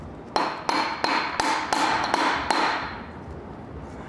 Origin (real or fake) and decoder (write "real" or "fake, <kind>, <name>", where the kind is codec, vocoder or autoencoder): real